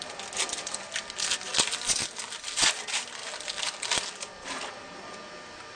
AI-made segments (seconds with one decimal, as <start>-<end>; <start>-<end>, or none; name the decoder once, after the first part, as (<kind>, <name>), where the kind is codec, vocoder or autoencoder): none